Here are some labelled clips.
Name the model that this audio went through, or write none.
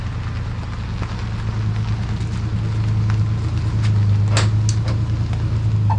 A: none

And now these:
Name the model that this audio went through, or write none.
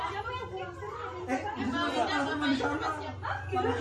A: none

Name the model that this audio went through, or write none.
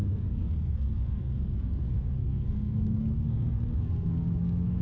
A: codec, SNAC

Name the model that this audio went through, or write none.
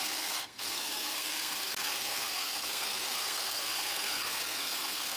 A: codec, SNAC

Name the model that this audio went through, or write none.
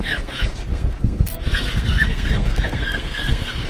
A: codec, SNAC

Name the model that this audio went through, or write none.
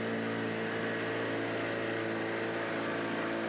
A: none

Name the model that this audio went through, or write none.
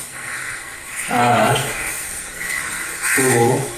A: codec, SNAC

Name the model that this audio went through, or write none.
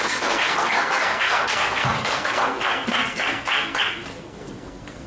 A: codec, SNAC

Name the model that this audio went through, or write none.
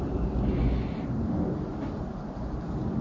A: none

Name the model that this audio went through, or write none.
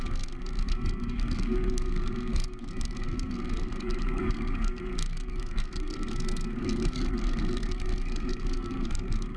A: codec, SNAC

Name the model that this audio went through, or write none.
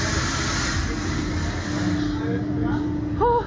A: none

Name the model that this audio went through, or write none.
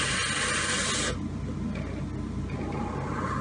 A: none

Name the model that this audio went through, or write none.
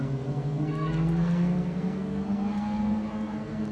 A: codec, SNAC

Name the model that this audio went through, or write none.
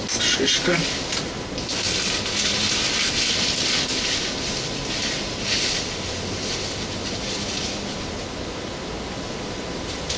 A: none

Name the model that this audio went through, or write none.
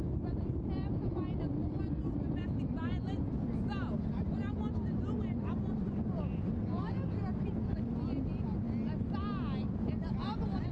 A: none